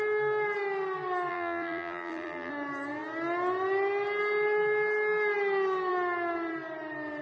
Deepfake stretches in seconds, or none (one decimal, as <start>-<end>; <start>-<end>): 1.3-2.5